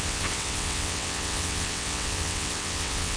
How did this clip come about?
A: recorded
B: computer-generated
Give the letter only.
B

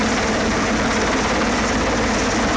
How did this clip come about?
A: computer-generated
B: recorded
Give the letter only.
B